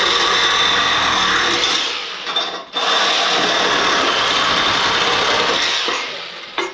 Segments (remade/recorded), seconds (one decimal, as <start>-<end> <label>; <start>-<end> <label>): 0.0-6.7 recorded